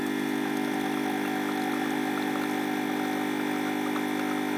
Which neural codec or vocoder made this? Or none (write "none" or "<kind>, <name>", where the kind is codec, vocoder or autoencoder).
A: none